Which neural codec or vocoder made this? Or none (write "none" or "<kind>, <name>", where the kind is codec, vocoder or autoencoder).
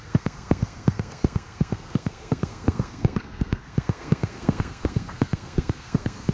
codec, SNAC